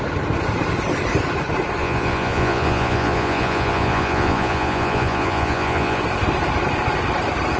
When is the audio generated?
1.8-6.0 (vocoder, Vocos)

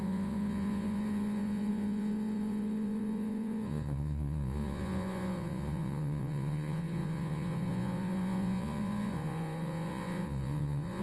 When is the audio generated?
0.0-11.0 (vocoder, Vocos)